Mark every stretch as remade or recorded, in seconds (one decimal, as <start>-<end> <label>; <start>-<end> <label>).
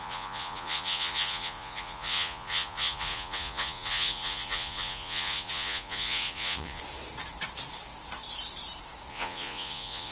0.0-6.8 remade; 6.8-9.1 recorded; 9.1-10.1 remade